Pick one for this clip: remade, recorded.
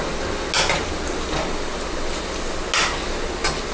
recorded